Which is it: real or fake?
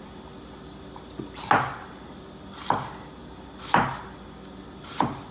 real